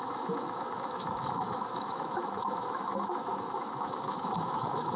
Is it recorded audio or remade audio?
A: remade